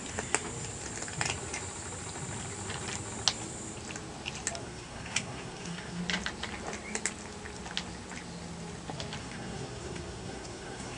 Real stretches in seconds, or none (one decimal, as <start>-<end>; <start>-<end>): 0.0-4.6; 6.0-9.2

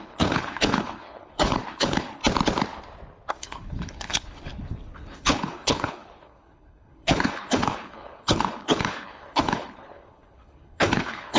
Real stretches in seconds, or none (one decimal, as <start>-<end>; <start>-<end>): 2.2-3.3